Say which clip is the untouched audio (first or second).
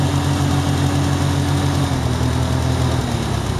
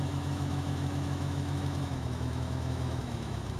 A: first